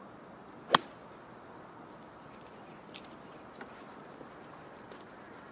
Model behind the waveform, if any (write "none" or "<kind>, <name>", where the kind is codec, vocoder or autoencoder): none